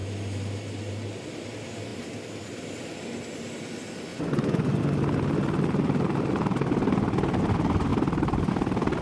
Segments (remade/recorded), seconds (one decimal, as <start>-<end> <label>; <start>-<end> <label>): 0.0-4.1 recorded; 4.1-4.8 remade; 4.8-9.0 recorded